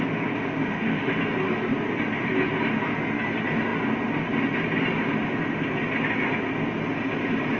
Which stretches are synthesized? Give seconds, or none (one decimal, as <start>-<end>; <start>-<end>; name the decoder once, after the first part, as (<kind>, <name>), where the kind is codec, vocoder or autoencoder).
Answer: 0.7-1.2 (autoencoder, DAC-VAE)